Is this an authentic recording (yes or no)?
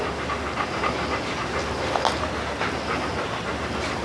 yes